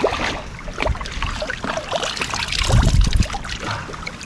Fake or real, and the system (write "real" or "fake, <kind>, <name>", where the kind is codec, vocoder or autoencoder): real